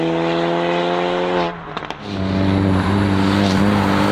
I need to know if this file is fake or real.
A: real